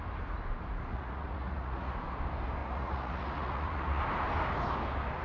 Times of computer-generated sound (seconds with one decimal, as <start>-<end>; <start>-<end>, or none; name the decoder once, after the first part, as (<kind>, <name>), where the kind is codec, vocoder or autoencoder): 0.9-1.9 (vocoder, Vocos); 2.6-4.0